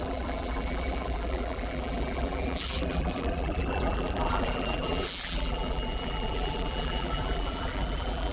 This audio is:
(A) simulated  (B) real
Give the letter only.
A